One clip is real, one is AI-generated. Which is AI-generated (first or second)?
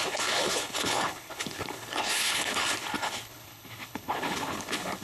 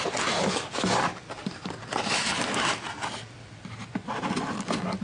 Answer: first